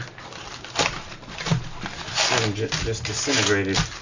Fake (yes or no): no